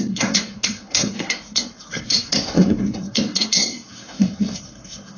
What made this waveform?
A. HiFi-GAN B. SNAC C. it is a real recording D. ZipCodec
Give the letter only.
B